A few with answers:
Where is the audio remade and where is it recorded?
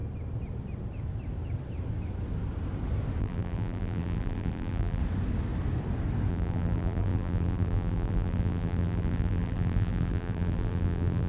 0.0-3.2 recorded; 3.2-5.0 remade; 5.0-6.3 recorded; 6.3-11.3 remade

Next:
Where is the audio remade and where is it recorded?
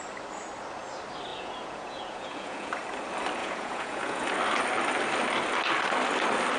0.0-1.3 recorded; 1.3-2.7 remade; 2.7-3.4 recorded; 3.4-4.3 remade; 4.3-6.6 recorded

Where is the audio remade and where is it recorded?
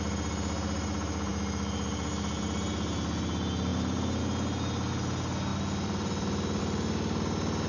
0.0-3.7 recorded; 3.7-4.2 remade; 4.2-5.5 recorded; 5.5-6.6 remade; 6.6-7.7 recorded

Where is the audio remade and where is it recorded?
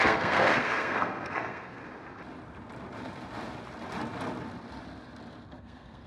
0.0-1.8 remade; 1.8-5.5 recorded; 5.5-6.1 remade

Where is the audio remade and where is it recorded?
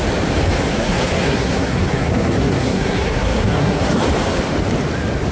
0.0-0.7 recorded; 0.7-3.9 remade; 3.9-5.3 recorded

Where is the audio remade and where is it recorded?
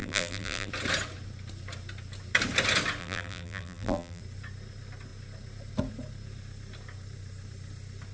0.0-0.7 remade; 0.7-3.0 recorded; 3.0-4.2 remade; 4.2-8.1 recorded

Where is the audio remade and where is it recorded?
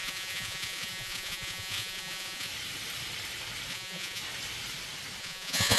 0.0-2.5 remade; 2.5-3.7 recorded; 3.7-4.2 remade; 4.2-5.2 recorded; 5.2-5.8 remade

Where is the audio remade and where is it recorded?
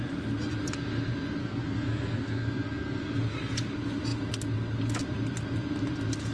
0.0-1.4 recorded; 1.4-3.2 remade; 3.2-6.3 recorded